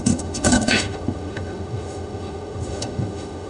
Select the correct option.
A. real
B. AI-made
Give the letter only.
B